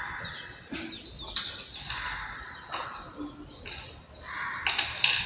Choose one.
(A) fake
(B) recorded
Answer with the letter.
B